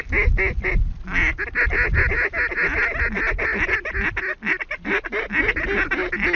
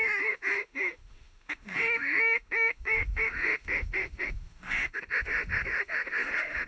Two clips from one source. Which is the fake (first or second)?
second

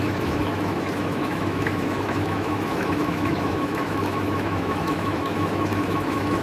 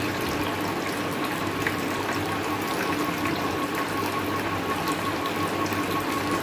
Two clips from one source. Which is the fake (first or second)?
first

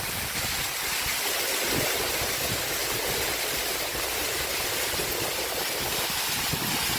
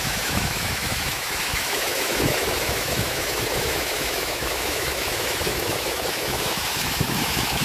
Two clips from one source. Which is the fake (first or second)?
second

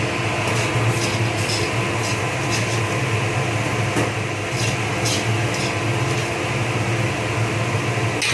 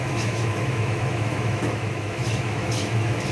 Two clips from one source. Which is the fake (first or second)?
second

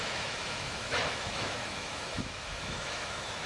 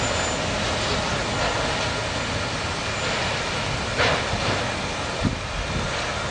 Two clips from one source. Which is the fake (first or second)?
first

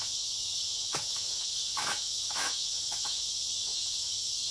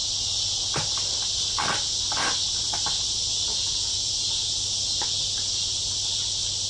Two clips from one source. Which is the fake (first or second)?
first